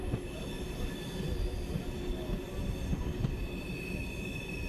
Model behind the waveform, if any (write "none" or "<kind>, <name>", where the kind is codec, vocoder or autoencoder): none